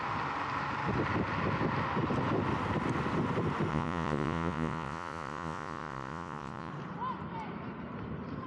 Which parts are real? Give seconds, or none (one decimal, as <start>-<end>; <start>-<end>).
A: 0.0-3.7; 6.7-8.5